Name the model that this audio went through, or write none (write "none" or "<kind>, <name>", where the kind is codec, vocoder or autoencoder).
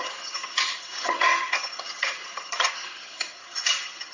vocoder, HiFi-GAN